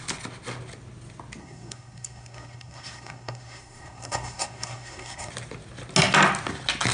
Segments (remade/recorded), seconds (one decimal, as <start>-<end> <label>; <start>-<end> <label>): 0.0-1.4 recorded; 1.4-5.3 remade; 5.3-6.9 recorded